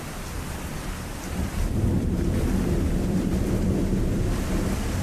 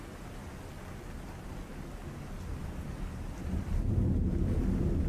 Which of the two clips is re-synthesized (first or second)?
first